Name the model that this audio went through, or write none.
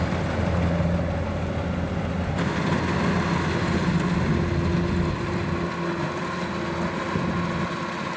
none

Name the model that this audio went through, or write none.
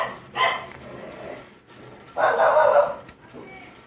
none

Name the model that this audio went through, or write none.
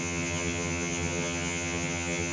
vocoder, HiFi-GAN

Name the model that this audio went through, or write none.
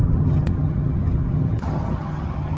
vocoder, HiFi-GAN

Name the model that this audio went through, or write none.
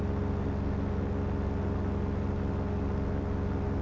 none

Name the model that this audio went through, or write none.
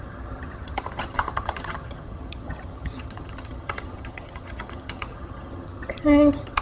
vocoder, HiFi-GAN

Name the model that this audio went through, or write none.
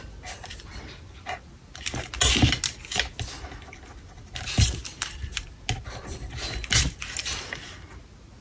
none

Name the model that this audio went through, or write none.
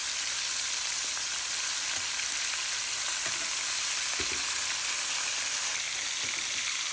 none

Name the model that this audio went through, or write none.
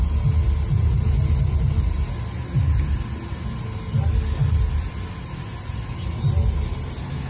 none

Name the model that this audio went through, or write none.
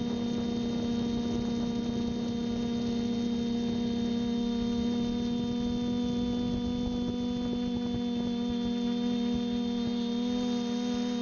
none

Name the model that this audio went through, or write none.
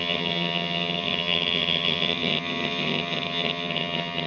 vocoder, HiFi-GAN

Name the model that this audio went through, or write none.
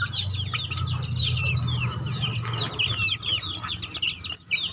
none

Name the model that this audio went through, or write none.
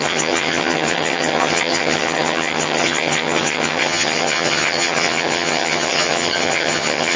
vocoder, HiFi-GAN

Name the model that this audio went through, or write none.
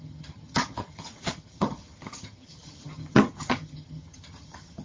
vocoder, HiFi-GAN